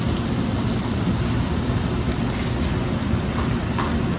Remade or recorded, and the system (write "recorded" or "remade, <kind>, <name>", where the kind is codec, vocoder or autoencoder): recorded